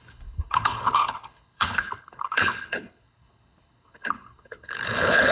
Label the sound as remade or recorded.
remade